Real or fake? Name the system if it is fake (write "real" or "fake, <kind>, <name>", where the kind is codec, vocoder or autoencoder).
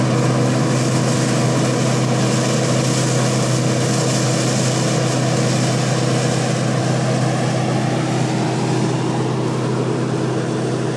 real